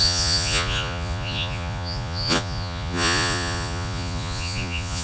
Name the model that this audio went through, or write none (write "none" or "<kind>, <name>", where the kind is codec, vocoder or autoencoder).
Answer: vocoder, Vocos